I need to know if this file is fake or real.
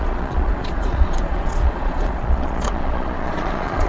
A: fake